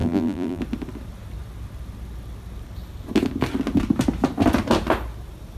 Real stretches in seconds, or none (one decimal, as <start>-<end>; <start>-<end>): 0.6-5.6